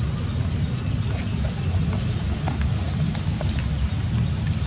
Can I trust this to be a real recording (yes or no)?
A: yes